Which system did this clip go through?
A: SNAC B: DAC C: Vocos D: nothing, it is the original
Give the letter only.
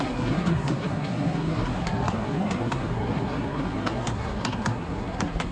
A